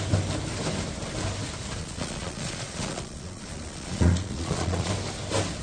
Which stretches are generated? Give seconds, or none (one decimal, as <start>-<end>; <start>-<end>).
1.8-4.9